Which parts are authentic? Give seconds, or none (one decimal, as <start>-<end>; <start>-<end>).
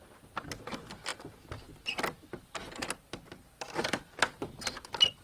0.0-5.2